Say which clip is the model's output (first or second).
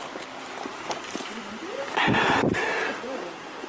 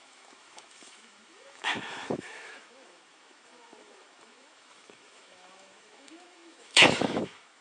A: second